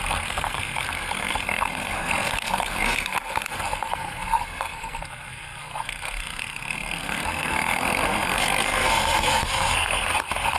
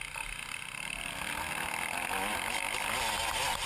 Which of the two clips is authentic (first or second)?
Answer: second